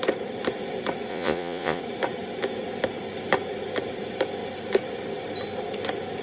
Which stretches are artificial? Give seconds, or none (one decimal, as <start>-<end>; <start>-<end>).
1.1-1.8